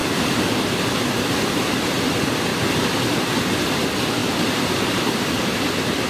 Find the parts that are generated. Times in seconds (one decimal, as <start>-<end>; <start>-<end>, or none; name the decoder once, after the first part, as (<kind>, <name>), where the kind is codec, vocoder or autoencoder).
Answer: 4.2-6.1 (vocoder, BigVGAN v2)